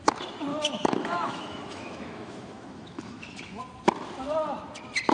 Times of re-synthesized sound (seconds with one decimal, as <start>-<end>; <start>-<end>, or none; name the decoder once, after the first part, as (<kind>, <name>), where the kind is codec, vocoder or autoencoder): 0.5-3.6 (autoencoder, DAC-VAE)